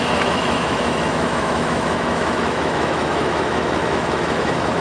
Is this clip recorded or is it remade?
remade